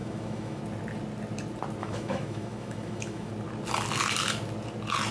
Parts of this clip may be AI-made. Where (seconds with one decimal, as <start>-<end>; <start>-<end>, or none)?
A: 0.0-0.6; 1.8-3.3